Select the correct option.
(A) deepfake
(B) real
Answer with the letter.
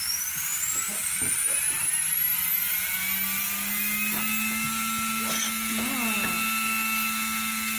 B